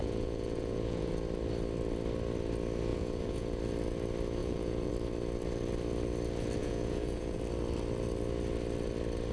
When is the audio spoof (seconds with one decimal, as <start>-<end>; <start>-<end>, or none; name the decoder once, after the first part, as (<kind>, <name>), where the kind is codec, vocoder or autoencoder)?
0.0-1.1 (vocoder, Vocos); 2.9-3.6; 4.4-4.9; 6.6-7.4